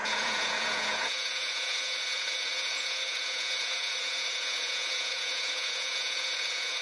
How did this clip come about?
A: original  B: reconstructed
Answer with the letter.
B